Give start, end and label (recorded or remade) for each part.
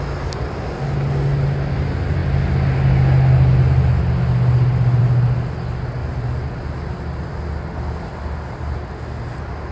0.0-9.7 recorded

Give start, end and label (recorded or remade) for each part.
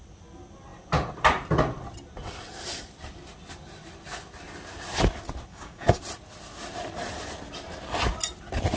0.0-5.5 recorded; 5.5-6.0 remade; 6.0-8.8 recorded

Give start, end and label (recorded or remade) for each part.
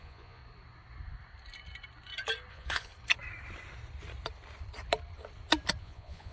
0.0-0.4 remade; 0.4-2.5 recorded; 2.5-2.9 remade; 2.9-5.8 recorded; 5.8-6.3 remade